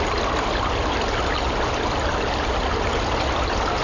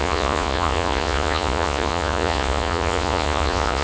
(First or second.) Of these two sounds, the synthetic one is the second